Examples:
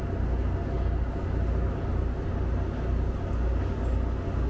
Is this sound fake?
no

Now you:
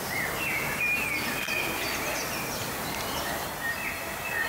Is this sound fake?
no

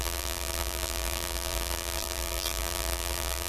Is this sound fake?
yes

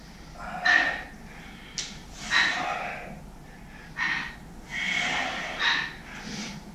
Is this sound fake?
no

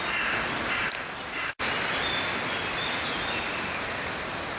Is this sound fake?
yes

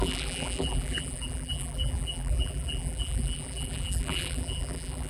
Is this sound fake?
yes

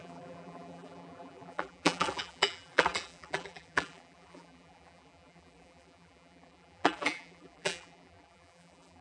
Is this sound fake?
yes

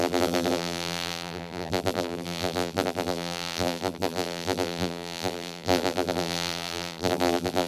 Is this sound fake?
yes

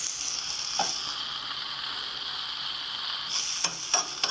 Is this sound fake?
no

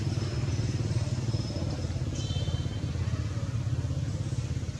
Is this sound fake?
no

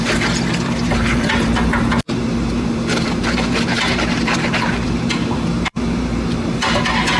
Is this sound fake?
yes